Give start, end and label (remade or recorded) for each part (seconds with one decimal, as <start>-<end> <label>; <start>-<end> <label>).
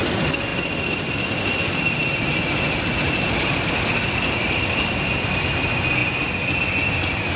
0.0-7.4 recorded